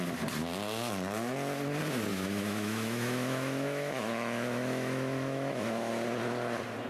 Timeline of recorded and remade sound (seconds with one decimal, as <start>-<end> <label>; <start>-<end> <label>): 0.0-2.1 recorded; 2.1-5.9 remade; 5.9-6.9 recorded